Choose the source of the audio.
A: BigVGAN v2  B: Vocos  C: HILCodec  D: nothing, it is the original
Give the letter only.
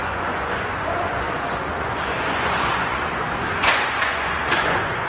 B